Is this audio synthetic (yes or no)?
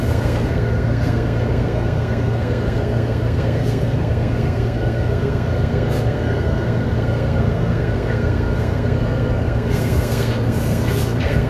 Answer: yes